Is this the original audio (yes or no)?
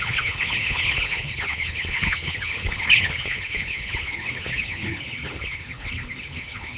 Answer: no